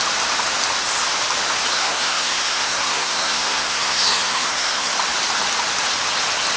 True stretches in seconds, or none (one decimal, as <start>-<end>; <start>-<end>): 0.0-1.7; 4.9-6.6